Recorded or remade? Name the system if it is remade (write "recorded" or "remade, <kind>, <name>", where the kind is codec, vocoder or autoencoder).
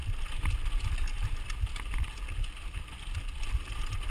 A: recorded